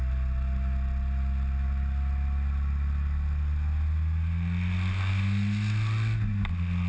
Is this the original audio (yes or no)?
yes